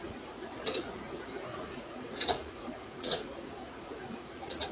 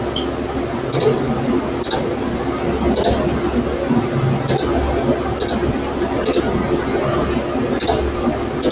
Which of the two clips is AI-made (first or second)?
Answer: first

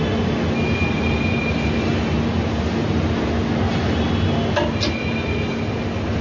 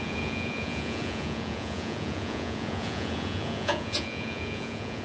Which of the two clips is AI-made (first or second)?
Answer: second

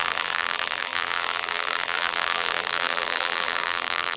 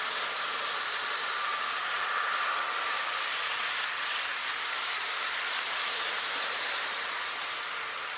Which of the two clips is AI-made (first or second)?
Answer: first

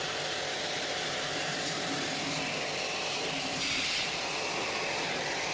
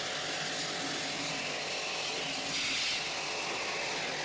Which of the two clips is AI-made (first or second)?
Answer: first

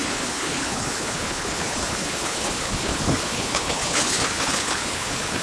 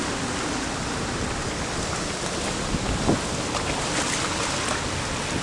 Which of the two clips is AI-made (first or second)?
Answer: first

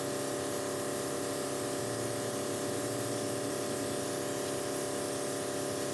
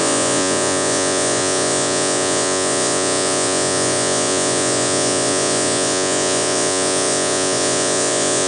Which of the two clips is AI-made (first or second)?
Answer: second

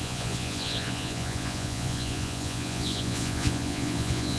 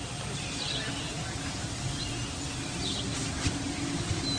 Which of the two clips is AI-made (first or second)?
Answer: first